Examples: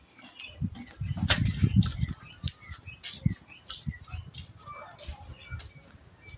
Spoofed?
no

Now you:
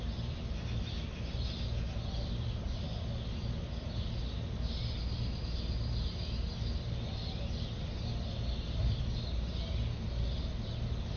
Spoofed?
no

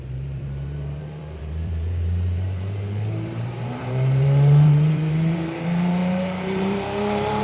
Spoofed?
yes